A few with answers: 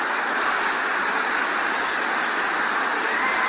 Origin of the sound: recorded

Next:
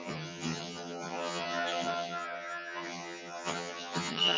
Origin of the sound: remade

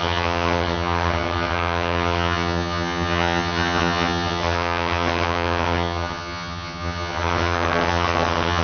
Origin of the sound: remade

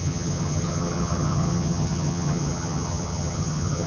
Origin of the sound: remade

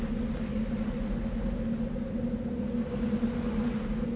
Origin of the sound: recorded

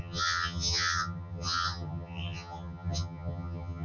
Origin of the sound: remade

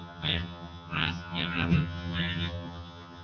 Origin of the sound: remade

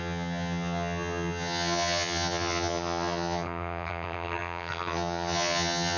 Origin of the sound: remade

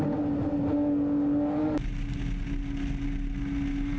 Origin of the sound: recorded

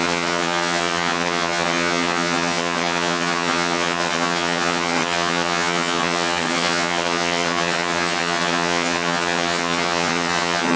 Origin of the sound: remade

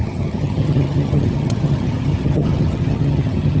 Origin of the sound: remade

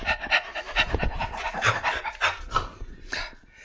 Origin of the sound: recorded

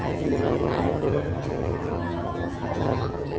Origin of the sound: remade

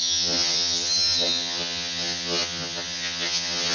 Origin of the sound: remade